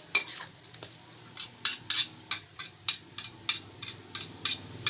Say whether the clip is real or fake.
real